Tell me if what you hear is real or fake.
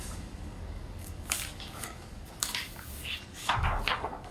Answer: fake